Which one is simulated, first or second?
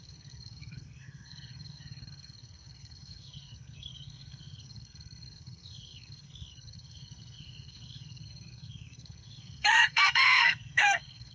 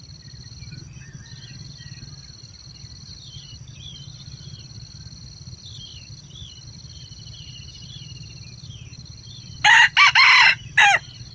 first